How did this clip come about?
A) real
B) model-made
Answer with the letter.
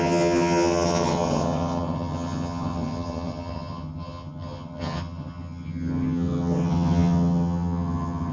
B